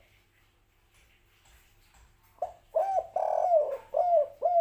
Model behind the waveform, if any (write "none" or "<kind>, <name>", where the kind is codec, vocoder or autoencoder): none